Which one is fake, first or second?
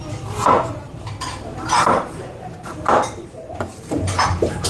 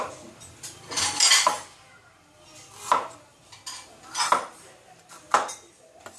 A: first